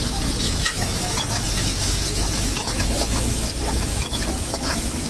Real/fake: fake